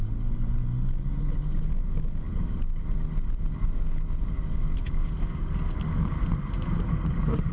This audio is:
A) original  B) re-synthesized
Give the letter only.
A